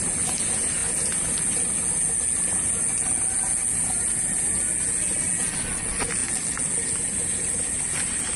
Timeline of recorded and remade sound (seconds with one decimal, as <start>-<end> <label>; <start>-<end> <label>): 0.0-8.4 recorded